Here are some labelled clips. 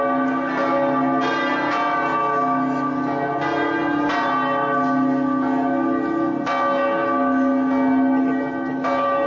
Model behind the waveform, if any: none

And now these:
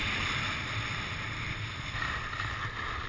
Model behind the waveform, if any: none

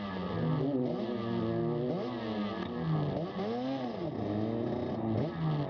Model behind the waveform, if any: none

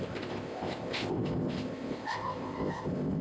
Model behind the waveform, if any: codec, ZipCodec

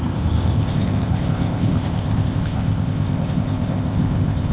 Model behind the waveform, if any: codec, ZipCodec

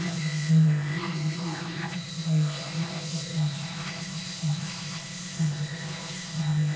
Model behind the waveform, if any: codec, ZipCodec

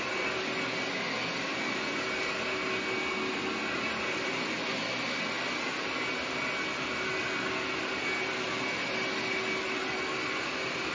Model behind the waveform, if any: none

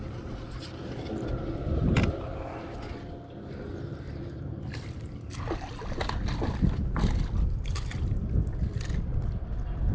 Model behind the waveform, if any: none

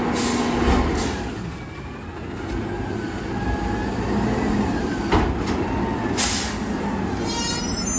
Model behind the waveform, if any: none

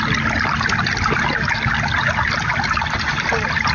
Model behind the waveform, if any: none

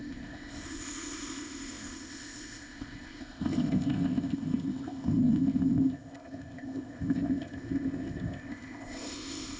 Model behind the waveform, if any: codec, ZipCodec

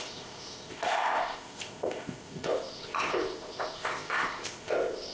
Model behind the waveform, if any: codec, ZipCodec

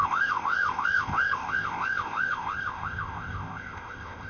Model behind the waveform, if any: codec, ZipCodec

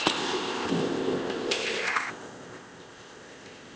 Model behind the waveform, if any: codec, ZipCodec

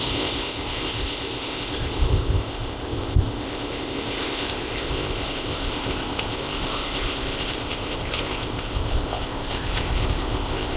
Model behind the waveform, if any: codec, ZipCodec